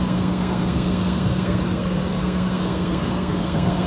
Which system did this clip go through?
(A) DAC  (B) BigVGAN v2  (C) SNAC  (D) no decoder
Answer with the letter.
C